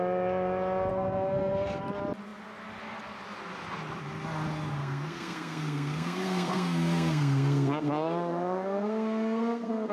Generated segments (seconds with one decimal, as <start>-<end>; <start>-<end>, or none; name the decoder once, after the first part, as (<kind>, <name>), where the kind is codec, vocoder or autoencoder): 0.9-1.8 (codec, SNAC); 4.8-9.9